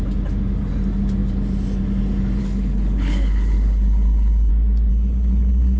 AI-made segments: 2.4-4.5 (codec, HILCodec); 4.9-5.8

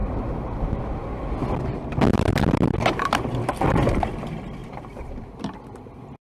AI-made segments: 0.0-0.8 (vocoder, BigVGAN v2); 4.6-6.3

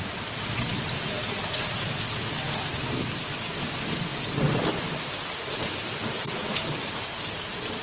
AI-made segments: none

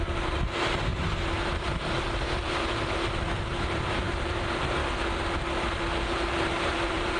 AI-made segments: 0.0-4.8 (vocoder, BigVGAN v2); 6.1-7.2